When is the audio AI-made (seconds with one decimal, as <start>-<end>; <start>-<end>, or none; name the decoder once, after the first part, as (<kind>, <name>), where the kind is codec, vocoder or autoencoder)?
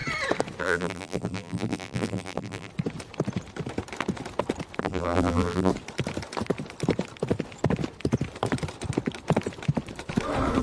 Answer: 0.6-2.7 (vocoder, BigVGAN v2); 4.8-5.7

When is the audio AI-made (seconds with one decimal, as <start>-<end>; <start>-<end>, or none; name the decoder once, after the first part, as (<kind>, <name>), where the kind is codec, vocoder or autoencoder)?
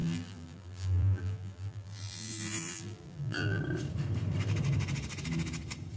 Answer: 0.0-3.6 (vocoder, BigVGAN v2)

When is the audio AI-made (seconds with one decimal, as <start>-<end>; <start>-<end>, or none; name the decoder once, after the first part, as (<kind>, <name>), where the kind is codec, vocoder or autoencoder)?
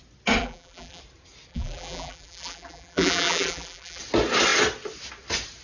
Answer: 0.4-1.0 (vocoder, BigVGAN v2); 1.5-4.0